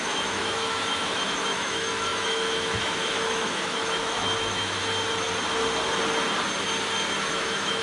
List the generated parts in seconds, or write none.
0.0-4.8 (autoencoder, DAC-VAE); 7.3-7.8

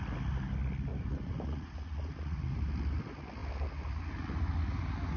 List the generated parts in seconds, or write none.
0.9-2.5 (vocoder, Vocos)

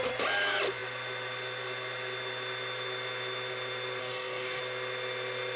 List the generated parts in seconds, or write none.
4.0-4.6 (codec, DAC)